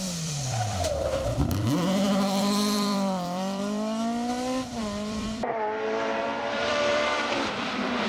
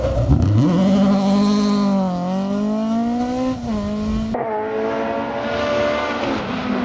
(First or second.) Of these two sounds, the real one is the second